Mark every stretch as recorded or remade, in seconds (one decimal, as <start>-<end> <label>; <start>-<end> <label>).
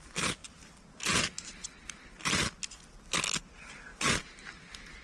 0.0-5.0 recorded